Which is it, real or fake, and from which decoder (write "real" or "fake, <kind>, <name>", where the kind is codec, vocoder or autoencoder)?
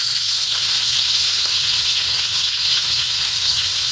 fake, codec, SNAC